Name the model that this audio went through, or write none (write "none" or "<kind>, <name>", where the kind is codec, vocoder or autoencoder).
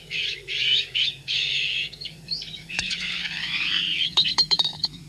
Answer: codec, DAC